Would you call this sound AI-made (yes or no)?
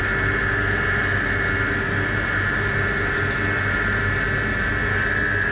no